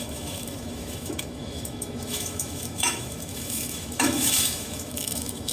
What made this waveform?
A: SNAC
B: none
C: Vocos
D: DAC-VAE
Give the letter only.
D